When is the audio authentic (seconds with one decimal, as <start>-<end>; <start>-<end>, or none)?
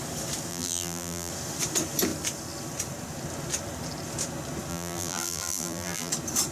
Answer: 0.0-0.5; 1.3-4.7; 6.1-6.5